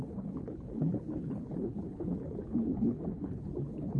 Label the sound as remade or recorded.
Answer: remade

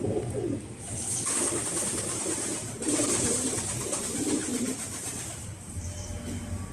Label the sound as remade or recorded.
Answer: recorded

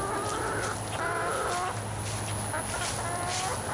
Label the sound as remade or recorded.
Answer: recorded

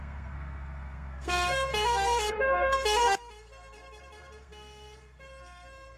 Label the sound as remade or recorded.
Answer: remade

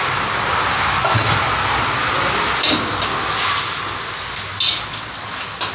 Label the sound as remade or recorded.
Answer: recorded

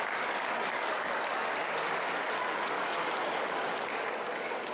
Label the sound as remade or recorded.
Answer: remade